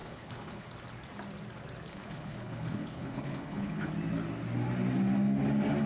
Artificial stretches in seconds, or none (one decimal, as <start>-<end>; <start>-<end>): 0.0-0.7; 1.9-3.9